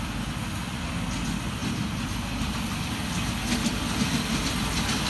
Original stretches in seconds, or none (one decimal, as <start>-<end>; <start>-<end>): 0.0-5.1